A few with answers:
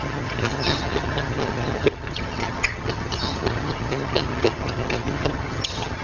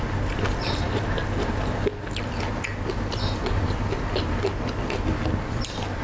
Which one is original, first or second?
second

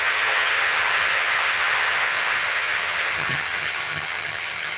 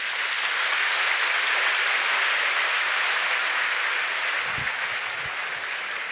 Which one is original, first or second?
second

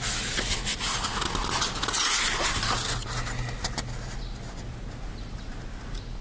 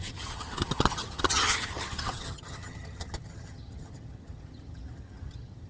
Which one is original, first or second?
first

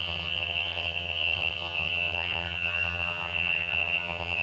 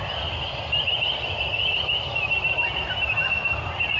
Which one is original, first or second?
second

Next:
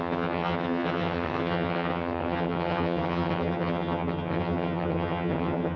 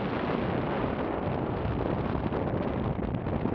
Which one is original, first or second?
second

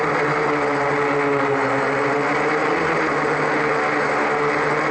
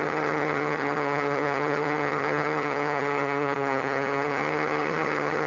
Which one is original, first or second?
first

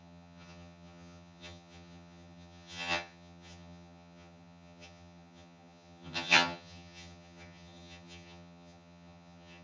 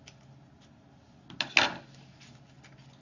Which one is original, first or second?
second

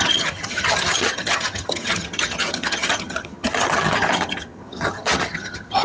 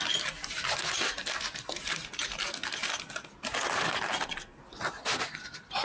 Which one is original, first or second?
second